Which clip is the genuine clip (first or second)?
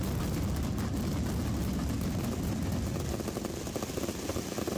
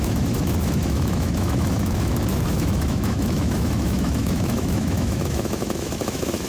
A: first